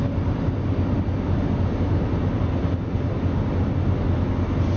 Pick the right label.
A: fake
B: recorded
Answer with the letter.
B